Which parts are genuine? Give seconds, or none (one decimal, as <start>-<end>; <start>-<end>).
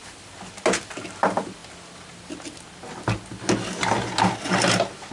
0.0-5.1